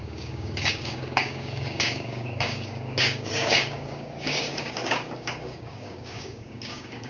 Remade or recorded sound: remade